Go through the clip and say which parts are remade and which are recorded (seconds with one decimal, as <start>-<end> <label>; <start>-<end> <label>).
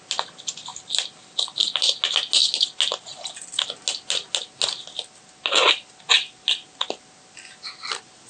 0.0-8.3 recorded